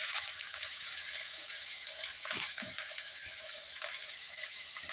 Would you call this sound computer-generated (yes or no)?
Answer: yes